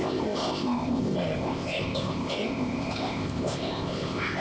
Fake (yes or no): yes